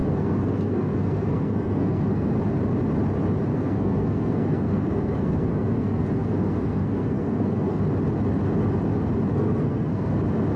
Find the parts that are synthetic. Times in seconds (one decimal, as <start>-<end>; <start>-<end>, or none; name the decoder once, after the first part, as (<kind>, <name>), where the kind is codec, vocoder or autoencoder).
0.0-2.4 (codec, SNAC); 3.5-7.8; 9.3-10.2